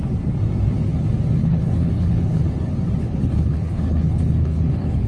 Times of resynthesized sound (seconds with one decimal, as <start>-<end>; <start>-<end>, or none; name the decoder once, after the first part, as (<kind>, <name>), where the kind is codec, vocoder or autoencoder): 1.4-2.4 (codec, HILCodec); 3.0-5.1